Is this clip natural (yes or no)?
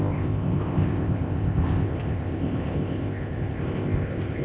no